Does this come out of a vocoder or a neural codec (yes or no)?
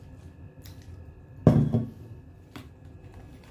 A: no